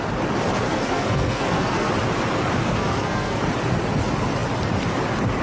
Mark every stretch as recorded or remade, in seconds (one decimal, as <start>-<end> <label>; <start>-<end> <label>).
0.0-0.7 recorded; 0.7-1.9 remade; 1.9-2.6 recorded; 2.6-3.4 remade; 3.4-5.4 recorded